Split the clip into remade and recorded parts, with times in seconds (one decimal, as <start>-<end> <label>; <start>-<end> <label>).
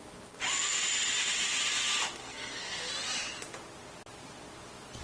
0.0-2.2 recorded; 2.2-2.9 remade; 2.9-5.0 recorded